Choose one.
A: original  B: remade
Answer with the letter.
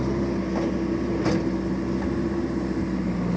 A